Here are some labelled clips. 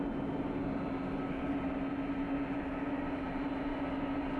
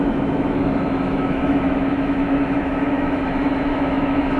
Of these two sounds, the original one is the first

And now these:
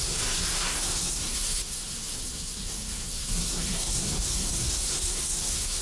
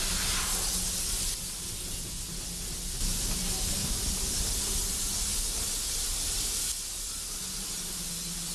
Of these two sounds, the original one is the second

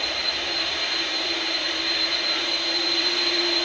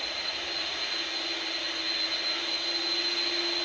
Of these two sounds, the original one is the second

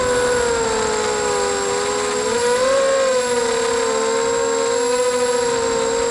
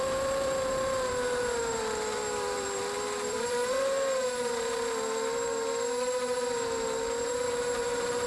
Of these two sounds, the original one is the first